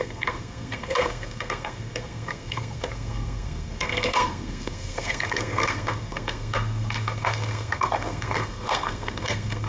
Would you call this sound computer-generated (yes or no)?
yes